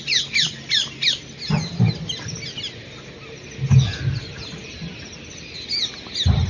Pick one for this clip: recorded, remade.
recorded